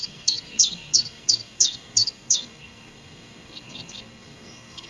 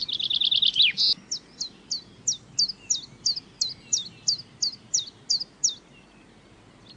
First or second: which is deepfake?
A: first